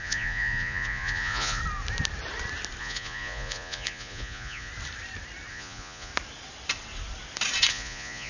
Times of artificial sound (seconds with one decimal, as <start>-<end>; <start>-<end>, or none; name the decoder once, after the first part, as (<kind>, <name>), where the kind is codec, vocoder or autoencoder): 0.0-1.6 (vocoder, Vocos); 2.8-4.7; 5.5-6.1; 7.7-8.3